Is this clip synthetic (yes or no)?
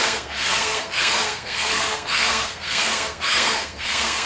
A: yes